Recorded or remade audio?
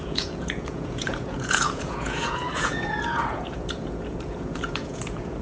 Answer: remade